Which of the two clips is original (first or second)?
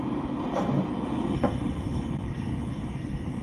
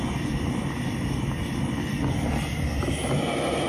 second